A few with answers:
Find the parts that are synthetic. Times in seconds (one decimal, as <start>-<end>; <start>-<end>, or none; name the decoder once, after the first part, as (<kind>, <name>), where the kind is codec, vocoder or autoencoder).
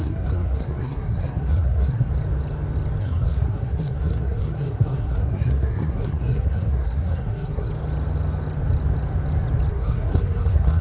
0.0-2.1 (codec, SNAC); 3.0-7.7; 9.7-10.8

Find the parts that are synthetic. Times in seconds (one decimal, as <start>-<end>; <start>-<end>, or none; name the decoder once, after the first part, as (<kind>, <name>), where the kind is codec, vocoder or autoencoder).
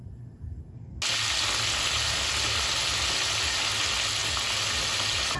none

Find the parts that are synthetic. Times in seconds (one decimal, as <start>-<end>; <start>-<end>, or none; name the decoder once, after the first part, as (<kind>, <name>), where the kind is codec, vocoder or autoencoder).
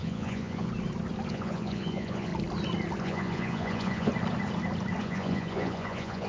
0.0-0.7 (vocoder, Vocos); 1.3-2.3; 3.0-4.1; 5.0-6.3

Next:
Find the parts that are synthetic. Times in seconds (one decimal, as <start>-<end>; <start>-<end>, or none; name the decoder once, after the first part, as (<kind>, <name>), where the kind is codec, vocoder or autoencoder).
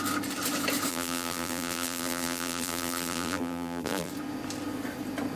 0.9-4.1 (vocoder, BigVGAN v2)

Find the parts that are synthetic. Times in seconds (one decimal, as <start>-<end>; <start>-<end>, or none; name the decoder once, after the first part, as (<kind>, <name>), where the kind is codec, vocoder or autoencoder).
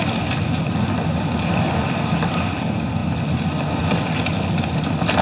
none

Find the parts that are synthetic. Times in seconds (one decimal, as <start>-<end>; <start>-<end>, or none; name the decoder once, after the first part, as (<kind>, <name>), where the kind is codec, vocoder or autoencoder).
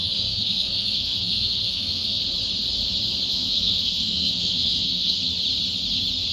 0.0-2.2 (codec, SNAC); 3.3-5.2